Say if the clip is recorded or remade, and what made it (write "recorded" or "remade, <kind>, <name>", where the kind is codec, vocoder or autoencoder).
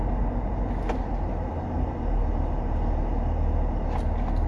recorded